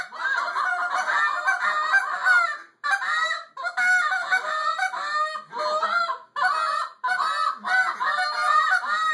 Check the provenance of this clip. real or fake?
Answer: real